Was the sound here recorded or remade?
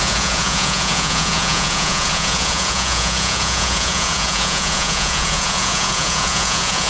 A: remade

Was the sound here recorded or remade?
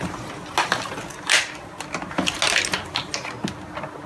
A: recorded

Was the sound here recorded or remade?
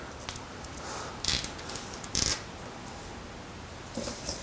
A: recorded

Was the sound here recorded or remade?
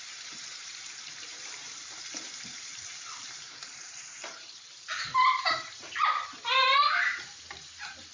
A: remade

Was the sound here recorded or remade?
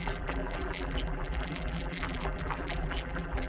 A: remade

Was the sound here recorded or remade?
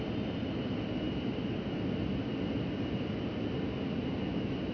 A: recorded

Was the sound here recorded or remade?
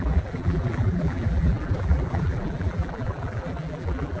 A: remade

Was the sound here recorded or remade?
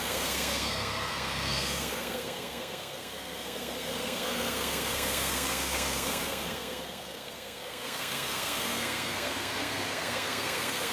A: remade